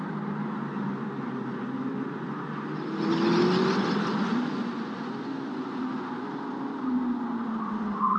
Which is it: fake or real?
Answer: real